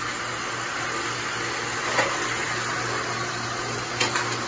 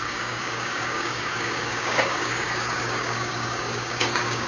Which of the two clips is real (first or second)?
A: first